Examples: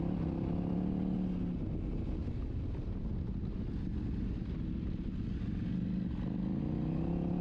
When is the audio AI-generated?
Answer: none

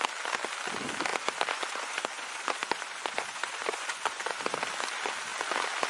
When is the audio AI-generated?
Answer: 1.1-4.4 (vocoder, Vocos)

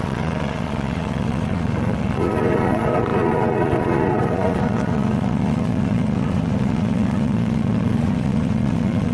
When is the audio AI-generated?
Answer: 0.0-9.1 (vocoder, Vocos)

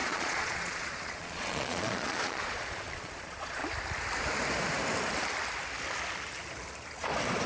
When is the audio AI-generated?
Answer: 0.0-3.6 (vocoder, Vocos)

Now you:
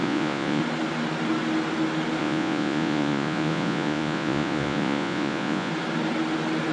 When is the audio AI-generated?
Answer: 0.0-0.6 (vocoder, Vocos); 2.2-5.7

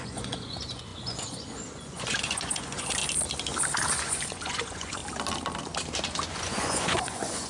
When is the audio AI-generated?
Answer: 0.0-3.0 (vocoder, Vocos); 3.9-5.0; 6.3-7.5